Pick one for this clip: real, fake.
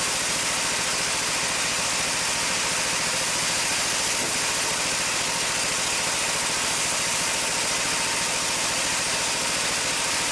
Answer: real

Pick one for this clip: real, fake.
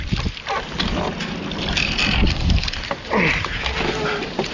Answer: real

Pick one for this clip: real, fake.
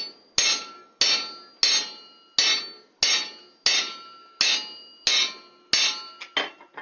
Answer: real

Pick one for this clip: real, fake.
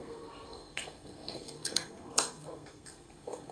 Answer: fake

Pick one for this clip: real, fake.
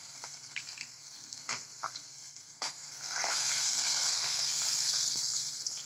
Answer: fake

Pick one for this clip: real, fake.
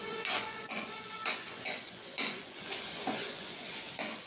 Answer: fake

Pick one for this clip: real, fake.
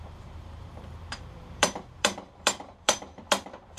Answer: fake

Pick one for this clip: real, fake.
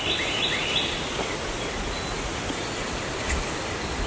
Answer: real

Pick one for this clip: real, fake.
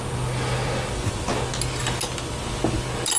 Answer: real